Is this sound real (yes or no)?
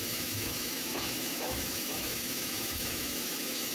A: no